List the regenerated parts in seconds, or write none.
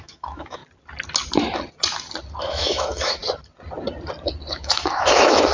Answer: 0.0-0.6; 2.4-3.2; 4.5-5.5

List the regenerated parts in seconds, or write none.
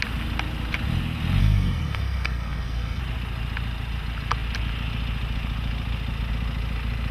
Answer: 1.4-3.0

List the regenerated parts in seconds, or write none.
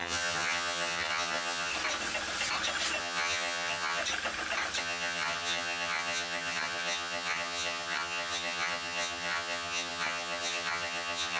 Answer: 0.0-1.7; 3.0-4.0; 4.8-11.4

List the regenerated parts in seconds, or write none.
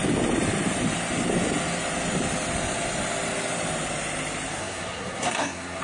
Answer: 4.6-5.8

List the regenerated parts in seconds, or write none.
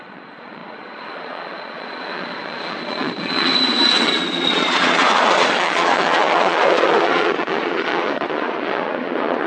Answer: 0.0-9.5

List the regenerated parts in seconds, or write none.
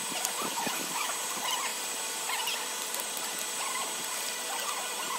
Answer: 0.5-1.1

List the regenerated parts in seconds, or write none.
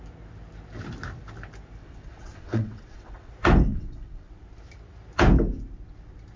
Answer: 1.8-3.3; 3.7-4.3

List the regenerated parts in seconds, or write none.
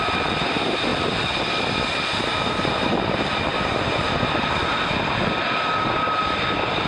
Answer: none